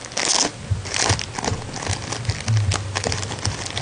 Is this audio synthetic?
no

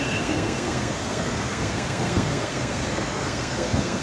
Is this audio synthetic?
yes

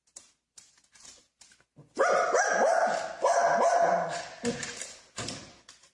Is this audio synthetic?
no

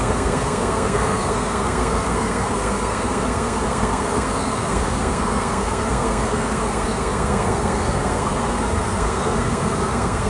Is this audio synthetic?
yes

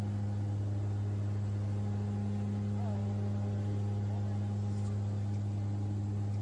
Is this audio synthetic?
no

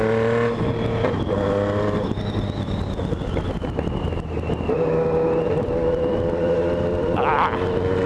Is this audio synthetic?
no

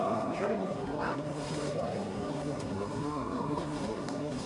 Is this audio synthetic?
yes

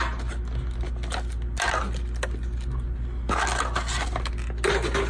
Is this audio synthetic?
no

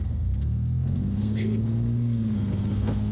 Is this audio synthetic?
yes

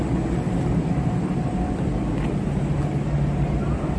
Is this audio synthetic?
no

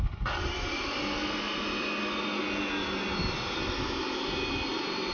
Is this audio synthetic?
no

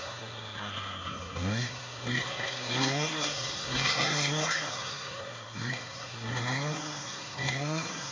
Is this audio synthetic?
yes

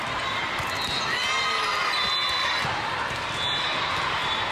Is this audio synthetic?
no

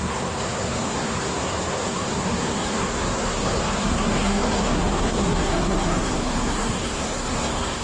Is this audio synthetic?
yes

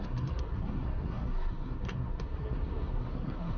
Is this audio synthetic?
yes